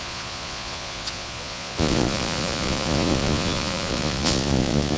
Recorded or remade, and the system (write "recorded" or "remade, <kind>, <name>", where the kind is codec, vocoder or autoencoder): remade, vocoder, Vocos